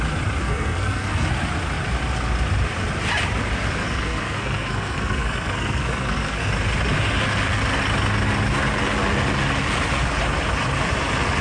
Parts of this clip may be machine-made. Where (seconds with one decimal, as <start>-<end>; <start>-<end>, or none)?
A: 0.4-1.3; 3.8-6.5